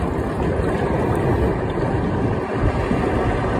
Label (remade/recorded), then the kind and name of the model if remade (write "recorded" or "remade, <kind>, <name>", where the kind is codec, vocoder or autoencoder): recorded